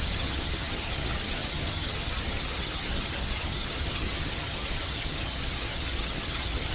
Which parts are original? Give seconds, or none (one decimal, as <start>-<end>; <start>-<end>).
none